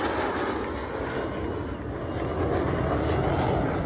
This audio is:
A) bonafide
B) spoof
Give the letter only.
A